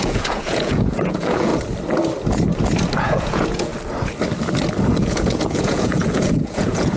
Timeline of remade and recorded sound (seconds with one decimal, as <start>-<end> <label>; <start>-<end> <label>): 0.0-1.5 remade; 1.5-3.0 recorded; 3.0-3.7 remade; 3.7-5.0 recorded; 5.0-7.0 remade